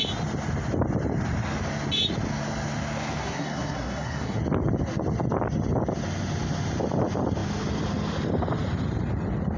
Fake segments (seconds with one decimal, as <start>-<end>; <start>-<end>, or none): 3.2-4.4